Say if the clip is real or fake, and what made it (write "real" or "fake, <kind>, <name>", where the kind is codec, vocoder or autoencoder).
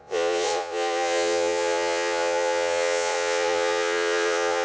fake, vocoder, Vocos